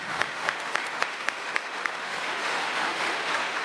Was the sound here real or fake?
fake